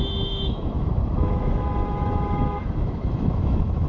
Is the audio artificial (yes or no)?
yes